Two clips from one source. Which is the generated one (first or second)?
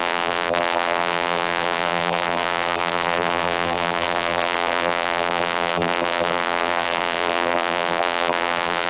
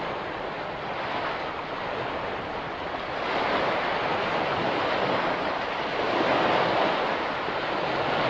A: first